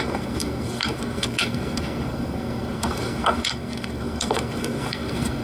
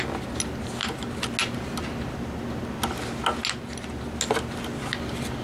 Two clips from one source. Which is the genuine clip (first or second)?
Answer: second